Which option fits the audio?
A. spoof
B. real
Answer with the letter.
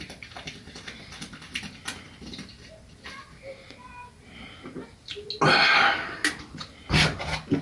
B